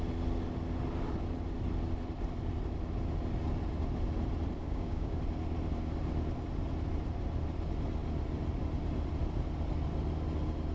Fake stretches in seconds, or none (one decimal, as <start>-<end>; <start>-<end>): 4.6-5.2